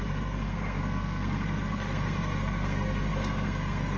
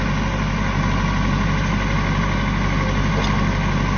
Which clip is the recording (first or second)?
second